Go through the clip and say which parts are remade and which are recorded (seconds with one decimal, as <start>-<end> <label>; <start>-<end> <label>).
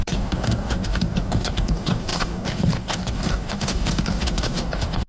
0.0-5.1 remade